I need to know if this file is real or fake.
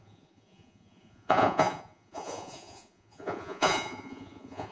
fake